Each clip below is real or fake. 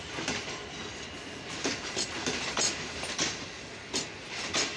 real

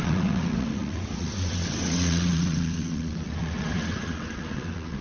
fake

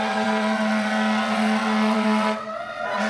fake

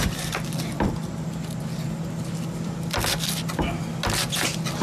real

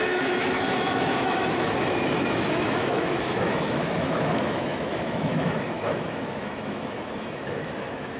fake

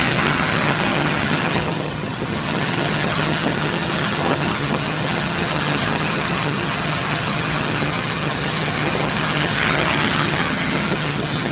fake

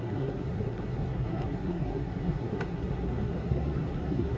fake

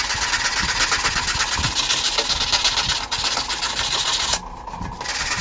real